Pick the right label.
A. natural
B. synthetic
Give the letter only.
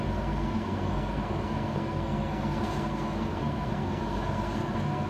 B